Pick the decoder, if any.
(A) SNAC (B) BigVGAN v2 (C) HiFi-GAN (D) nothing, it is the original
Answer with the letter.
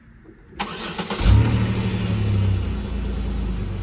D